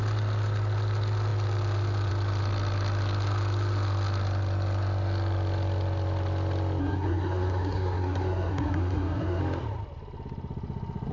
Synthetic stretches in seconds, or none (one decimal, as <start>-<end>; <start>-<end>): 6.8-9.4